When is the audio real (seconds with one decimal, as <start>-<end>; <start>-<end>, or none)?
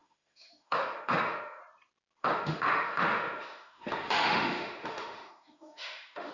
1.6-2.2